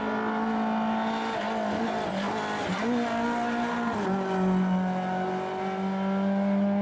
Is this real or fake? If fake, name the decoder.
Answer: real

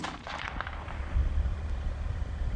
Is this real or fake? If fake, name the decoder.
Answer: fake, vocoder, BigVGAN v2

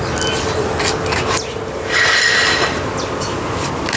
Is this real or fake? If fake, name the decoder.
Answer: real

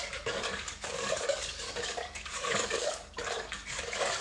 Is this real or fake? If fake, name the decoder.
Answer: fake, codec, DAC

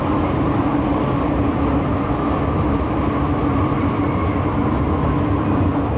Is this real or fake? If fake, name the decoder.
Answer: real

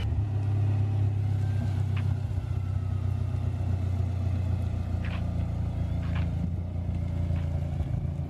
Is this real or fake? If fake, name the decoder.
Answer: real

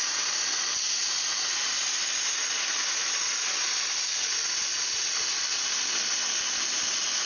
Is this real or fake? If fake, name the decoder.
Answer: real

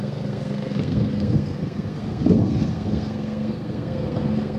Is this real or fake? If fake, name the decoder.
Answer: fake, codec, SNAC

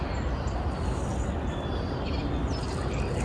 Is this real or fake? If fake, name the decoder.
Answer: real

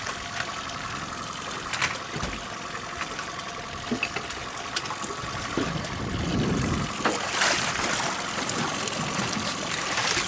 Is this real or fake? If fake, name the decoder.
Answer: real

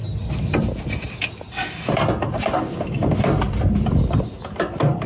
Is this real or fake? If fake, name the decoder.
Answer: real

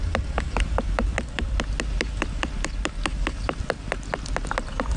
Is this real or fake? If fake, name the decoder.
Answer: real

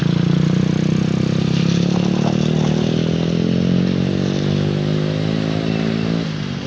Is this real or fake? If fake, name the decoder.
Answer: real